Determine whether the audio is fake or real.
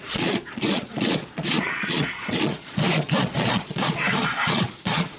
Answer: fake